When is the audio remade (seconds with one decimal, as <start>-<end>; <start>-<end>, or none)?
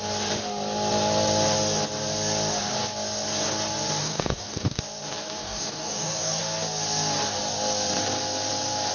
4.0-4.8; 5.4-6.4